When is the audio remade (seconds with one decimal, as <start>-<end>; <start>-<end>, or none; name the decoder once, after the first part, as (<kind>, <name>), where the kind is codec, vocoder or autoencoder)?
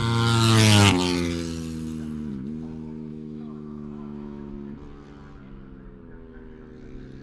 3.1-4.5 (autoencoder, DAC-VAE)